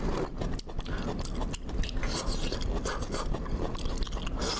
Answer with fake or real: real